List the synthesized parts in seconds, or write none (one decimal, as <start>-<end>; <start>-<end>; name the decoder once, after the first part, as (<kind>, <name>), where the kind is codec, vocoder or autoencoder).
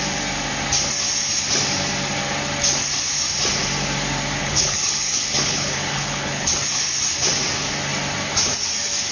4.4-6.5 (codec, HILCodec)